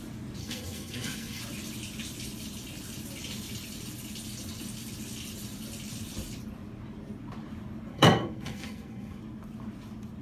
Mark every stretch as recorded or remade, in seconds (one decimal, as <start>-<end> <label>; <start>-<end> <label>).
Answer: 0.0-0.4 recorded; 0.4-1.4 remade; 1.4-7.9 recorded; 7.9-9.2 remade; 9.2-10.2 recorded

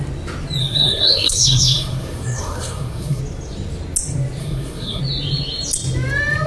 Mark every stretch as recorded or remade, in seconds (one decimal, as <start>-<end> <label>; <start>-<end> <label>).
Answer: 0.0-0.6 recorded; 0.6-3.2 remade; 3.2-4.4 recorded; 4.4-5.0 remade; 5.0-6.5 recorded

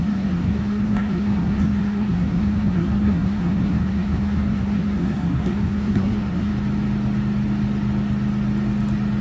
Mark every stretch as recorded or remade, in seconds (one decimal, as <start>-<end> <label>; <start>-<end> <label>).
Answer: 0.0-6.5 remade; 6.5-9.2 recorded

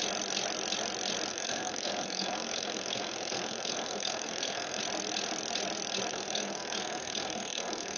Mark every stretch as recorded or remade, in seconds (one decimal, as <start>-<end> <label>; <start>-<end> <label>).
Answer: 0.0-1.3 recorded; 1.3-4.8 remade; 4.8-6.1 recorded; 6.1-8.0 remade

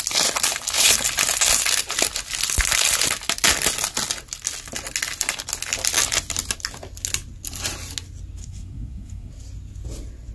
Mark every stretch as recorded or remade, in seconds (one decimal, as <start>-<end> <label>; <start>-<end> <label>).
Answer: 0.0-8.4 recorded; 8.4-9.3 remade; 9.3-10.3 recorded

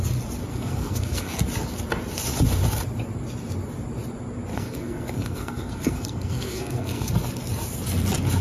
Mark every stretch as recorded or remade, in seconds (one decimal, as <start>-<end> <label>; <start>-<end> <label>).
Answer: 0.0-0.5 recorded; 0.5-1.4 remade; 1.4-4.5 recorded; 4.5-7.1 remade; 7.1-8.4 recorded

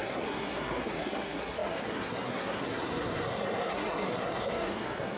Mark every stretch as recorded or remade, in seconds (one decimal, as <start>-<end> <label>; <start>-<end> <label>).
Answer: 0.0-5.2 remade